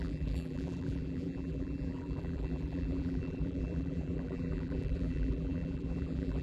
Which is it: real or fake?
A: fake